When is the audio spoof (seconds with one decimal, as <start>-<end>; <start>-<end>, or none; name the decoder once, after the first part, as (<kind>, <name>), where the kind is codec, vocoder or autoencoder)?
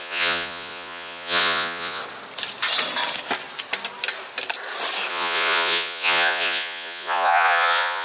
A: 0.0-2.0 (vocoder, Vocos); 5.1-8.0